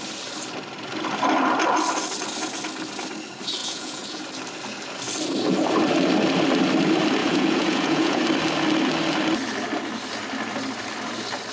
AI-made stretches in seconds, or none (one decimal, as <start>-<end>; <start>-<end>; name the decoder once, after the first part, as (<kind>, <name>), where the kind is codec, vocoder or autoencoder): 3.6-4.2 (vocoder, Vocos); 7.2-8.2